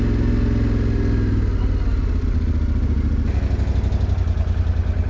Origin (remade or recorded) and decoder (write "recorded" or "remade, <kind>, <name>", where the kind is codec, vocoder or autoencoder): recorded